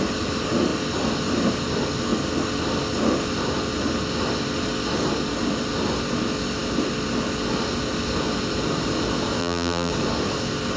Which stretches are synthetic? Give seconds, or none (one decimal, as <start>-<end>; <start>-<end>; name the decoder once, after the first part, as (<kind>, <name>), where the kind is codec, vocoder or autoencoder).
9.4-9.9 (vocoder, BigVGAN v2)